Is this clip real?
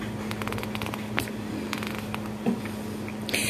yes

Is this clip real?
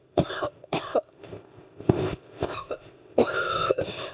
no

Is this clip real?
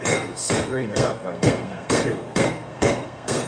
no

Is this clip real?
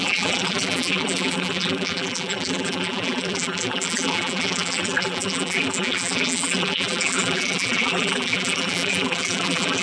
no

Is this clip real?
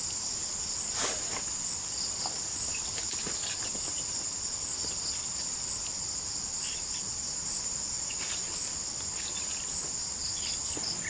yes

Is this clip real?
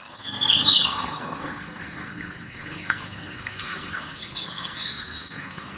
no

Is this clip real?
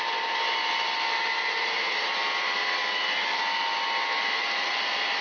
yes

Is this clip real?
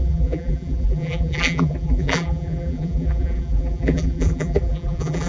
no